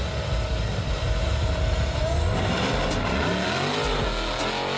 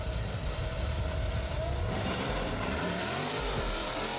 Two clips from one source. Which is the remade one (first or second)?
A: second